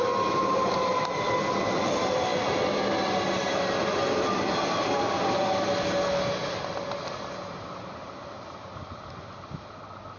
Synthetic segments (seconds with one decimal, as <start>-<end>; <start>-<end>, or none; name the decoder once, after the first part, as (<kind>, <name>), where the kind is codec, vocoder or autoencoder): none